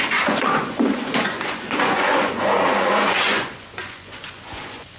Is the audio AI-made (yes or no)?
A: yes